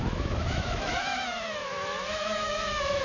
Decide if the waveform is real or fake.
fake